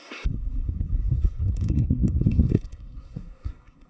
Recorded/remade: remade